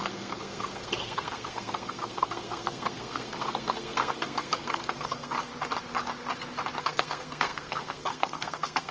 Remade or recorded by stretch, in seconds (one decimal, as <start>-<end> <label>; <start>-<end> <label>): 0.0-5.5 remade; 5.5-6.8 recorded; 6.8-8.9 remade